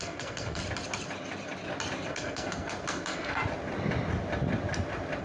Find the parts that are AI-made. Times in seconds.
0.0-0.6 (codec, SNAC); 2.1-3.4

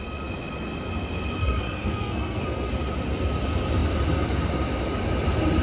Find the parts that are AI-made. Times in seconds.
1.4-2.7 (codec, SNAC)

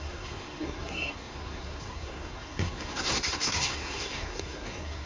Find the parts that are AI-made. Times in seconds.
0.0-5.1 (codec, SNAC)

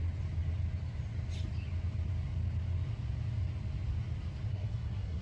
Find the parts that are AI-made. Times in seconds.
4.5-5.2 (codec, SNAC)